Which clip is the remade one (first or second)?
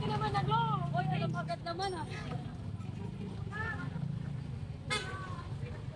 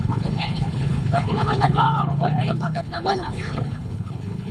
second